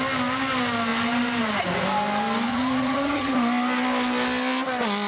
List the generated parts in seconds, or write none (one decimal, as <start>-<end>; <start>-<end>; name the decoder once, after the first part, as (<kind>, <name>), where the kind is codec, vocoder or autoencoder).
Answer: 2.5-3.3 (vocoder, HiFi-GAN)

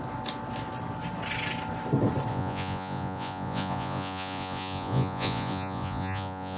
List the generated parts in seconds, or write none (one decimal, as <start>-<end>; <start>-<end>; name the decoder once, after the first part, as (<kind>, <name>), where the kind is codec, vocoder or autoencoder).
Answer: 2.3-6.6 (vocoder, Vocos)

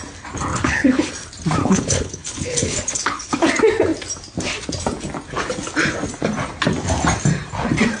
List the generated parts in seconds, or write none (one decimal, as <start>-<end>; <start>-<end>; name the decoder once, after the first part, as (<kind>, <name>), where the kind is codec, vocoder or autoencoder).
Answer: 0.5-1.1 (codec, HILCodec); 1.6-3.5

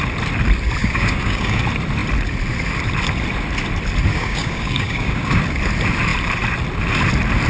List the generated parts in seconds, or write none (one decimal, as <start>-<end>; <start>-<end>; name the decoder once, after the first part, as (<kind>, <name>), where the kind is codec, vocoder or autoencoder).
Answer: 0.8-1.6 (codec, DAC); 4.1-5.4

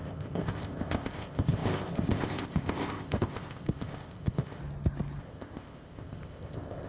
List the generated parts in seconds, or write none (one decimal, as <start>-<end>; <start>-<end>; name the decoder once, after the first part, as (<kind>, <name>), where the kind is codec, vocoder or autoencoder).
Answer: 0.0-4.6 (codec, ZipCodec); 5.2-6.9

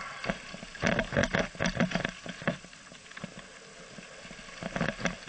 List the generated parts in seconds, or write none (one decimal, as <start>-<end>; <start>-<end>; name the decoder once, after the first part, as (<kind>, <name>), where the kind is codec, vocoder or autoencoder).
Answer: none

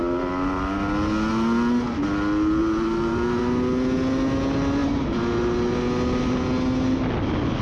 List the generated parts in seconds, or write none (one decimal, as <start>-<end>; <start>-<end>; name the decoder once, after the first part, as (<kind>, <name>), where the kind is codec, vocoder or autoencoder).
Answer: 2.6-3.4 (vocoder, BigVGAN v2)